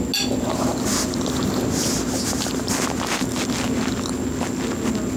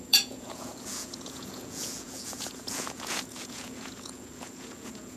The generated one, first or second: second